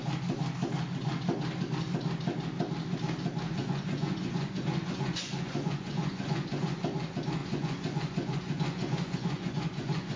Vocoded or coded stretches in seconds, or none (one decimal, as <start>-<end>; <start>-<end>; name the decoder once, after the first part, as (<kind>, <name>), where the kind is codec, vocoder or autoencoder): 3.6-6.8 (vocoder, Vocos); 7.4-10.2